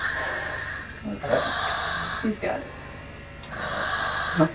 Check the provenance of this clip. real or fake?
real